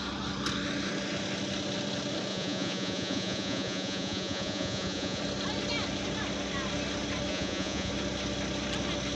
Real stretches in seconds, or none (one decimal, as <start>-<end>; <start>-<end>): 0.0-2.3; 5.2-7.3; 7.9-9.2